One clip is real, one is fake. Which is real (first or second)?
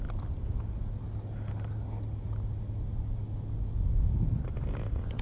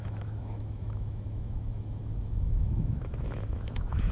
first